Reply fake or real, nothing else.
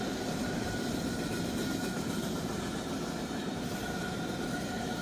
fake